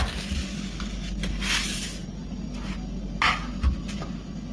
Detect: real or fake real